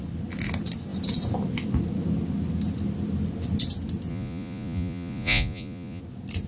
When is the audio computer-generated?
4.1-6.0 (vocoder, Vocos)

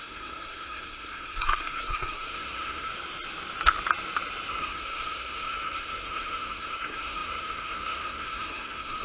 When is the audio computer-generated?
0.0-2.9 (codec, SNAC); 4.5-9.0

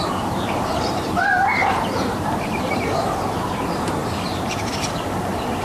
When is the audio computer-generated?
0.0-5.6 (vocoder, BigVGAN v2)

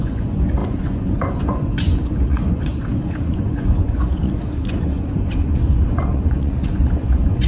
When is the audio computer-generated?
0.0-7.5 (vocoder, Vocos)

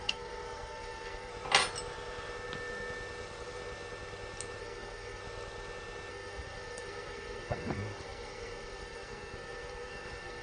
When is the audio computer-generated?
0.0-1.3 (codec, SNAC); 4.6-5.2; 6.1-10.4